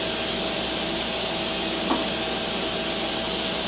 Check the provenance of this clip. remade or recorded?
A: recorded